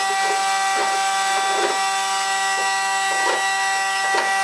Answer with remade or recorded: recorded